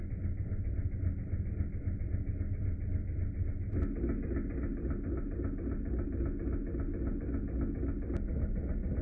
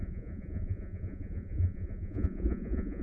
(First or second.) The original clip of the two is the first